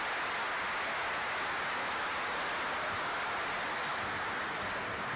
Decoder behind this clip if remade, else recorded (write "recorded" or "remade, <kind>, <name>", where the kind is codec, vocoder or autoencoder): recorded